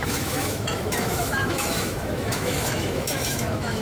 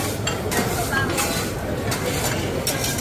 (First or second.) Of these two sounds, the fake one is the first